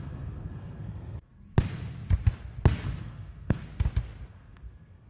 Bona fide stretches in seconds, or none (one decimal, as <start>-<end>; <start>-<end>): 1.3-3.0; 3.6-4.3